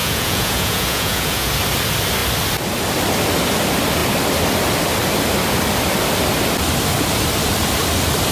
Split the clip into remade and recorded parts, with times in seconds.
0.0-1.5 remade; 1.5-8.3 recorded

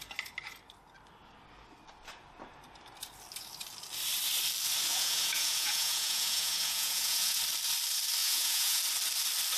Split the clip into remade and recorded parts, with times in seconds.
0.0-4.9 recorded; 4.9-7.4 remade; 7.4-8.2 recorded; 8.2-8.8 remade; 8.8-9.6 recorded

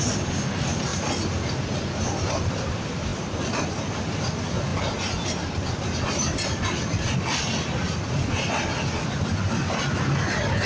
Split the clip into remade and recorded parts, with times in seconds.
0.0-10.7 recorded

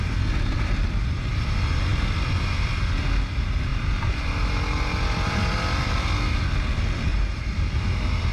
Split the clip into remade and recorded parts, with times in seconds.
0.0-1.9 recorded; 1.9-2.8 remade; 2.8-3.7 recorded; 3.7-4.3 remade; 4.3-7.1 recorded; 7.1-7.8 remade; 7.8-8.3 recorded

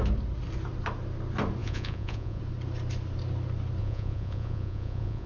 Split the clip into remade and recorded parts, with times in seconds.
0.0-1.6 recorded; 1.6-2.4 remade; 2.4-3.8 recorded; 3.8-5.3 remade

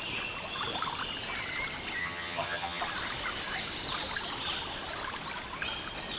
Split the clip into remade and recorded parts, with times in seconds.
0.0-2.0 recorded; 2.0-2.8 remade; 2.8-6.2 recorded

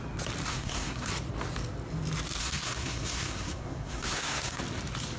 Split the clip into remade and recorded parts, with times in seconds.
0.0-0.5 recorded; 0.5-1.1 remade; 1.1-2.4 recorded; 2.4-4.6 remade; 4.6-5.2 recorded

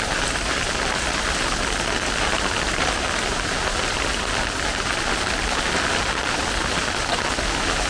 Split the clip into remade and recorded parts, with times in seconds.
0.0-7.9 recorded